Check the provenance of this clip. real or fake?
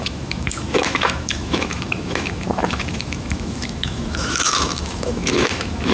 fake